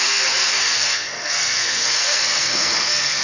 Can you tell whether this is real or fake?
fake